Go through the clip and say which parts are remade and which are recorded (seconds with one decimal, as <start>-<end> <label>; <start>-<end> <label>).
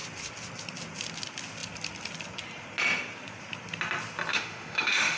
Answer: 0.0-4.3 recorded; 4.3-5.2 remade